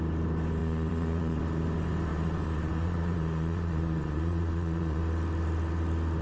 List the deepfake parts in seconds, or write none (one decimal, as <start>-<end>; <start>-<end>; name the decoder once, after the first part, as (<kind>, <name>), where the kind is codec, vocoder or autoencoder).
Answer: 0.6-1.4 (vocoder, Vocos); 2.1-5.0